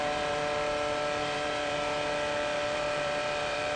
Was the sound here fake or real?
fake